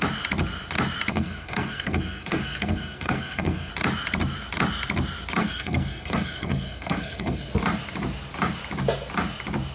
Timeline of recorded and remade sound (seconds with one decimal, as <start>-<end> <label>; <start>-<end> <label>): 0.0-1.1 recorded; 1.1-3.7 remade; 3.7-5.4 recorded; 5.4-7.5 remade; 7.5-9.7 recorded